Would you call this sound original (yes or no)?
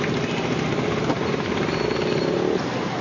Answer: yes